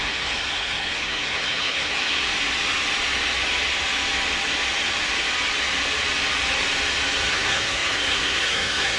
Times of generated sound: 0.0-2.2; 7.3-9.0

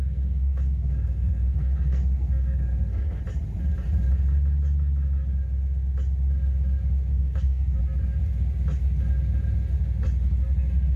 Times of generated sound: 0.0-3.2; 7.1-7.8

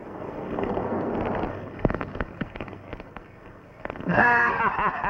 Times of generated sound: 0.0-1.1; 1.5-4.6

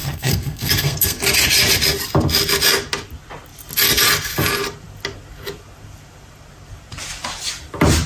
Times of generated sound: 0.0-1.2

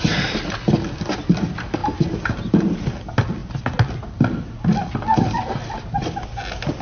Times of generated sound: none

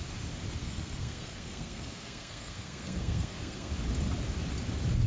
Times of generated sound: 0.6-3.7